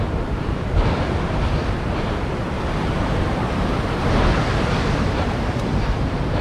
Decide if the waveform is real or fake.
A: fake